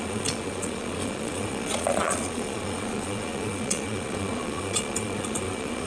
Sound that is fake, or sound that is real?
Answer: fake